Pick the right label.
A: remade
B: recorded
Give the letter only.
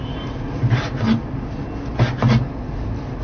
B